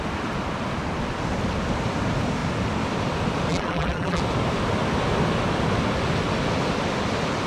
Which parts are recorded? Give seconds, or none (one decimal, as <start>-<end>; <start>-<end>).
0.0-3.5; 4.2-7.5